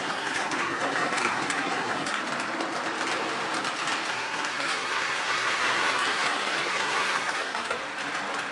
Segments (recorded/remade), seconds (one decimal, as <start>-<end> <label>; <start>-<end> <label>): 0.0-2.2 remade; 2.2-4.1 recorded; 4.1-7.8 remade; 7.8-8.5 recorded